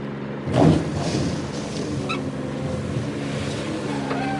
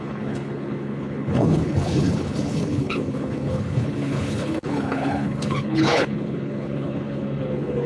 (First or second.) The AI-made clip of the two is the second